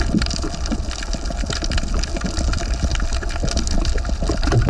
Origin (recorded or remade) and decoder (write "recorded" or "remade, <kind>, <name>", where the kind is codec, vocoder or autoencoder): recorded